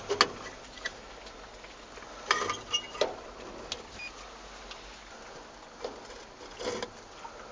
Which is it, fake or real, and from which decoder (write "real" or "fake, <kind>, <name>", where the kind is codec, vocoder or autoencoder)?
real